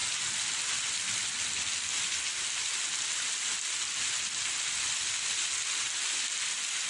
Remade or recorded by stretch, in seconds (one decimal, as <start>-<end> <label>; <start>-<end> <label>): 0.0-4.1 recorded; 4.1-6.9 remade

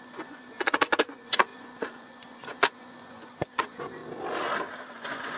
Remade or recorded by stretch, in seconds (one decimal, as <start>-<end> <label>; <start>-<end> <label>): 0.0-4.0 remade; 4.0-4.9 recorded; 4.9-5.4 remade

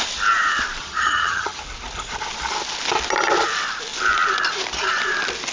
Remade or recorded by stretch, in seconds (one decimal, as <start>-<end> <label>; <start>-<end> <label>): 0.0-0.8 recorded; 0.8-1.6 remade; 1.6-5.5 recorded

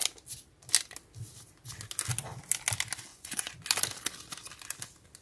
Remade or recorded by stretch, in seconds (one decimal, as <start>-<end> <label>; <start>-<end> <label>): 0.0-3.1 recorded; 3.1-3.6 remade; 3.6-5.2 recorded

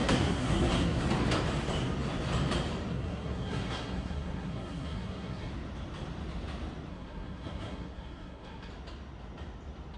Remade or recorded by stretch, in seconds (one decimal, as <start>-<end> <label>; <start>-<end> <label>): 0.0-1.0 remade; 1.0-2.9 recorded; 2.9-5.5 remade; 5.5-6.9 recorded; 6.9-8.7 remade; 8.7-10.0 recorded